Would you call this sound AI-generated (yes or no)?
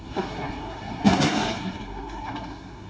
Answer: yes